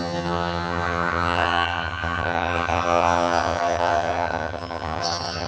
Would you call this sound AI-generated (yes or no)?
yes